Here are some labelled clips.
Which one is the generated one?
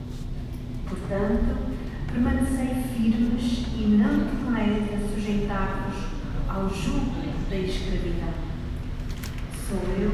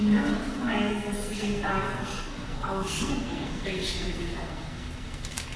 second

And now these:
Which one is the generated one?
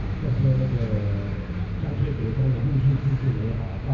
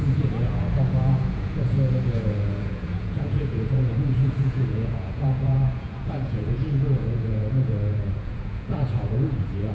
second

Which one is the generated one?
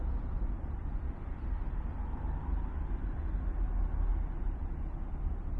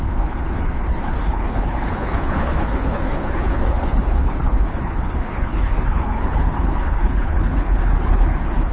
second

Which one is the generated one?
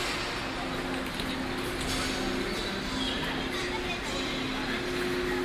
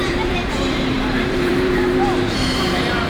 second